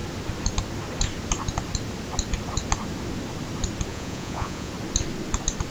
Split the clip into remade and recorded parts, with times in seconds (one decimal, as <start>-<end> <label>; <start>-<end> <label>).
0.0-3.9 recorded; 3.9-4.7 remade; 4.7-5.7 recorded